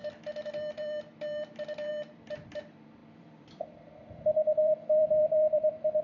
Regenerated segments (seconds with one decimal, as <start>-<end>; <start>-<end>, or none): 0.5-6.0